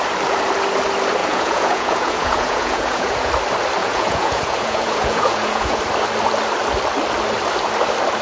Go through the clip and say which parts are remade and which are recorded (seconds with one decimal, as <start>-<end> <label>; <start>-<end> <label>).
0.0-1.2 recorded; 1.2-3.3 remade; 3.3-3.8 recorded; 3.8-5.8 remade; 5.8-8.2 recorded

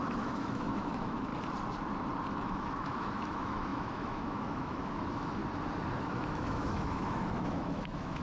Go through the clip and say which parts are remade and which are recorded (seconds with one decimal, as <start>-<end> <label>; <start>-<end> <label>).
0.0-1.3 remade; 1.3-2.3 recorded; 2.3-5.4 remade; 5.4-6.0 recorded; 6.0-8.2 remade

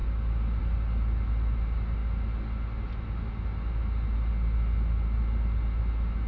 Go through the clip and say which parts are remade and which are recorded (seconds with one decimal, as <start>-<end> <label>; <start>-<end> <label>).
0.0-6.3 recorded

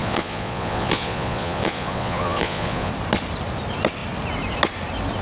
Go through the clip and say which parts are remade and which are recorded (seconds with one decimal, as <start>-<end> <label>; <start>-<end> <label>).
0.0-2.9 remade; 2.9-5.2 recorded

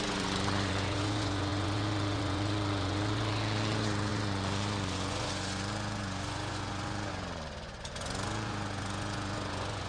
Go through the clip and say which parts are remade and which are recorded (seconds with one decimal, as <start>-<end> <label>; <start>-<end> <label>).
0.0-9.9 remade

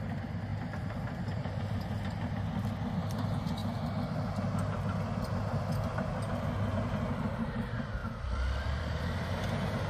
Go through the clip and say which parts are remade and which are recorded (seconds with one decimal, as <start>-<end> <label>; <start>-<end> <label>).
0.0-8.0 recorded; 8.0-9.4 remade; 9.4-9.9 recorded

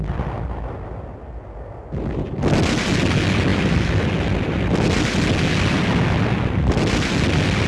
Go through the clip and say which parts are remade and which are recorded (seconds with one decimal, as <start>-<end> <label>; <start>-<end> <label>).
0.0-7.7 recorded

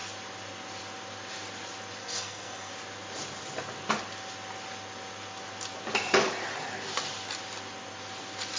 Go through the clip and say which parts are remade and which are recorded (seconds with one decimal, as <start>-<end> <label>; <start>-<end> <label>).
0.0-2.0 recorded; 2.0-2.7 remade; 2.7-8.6 recorded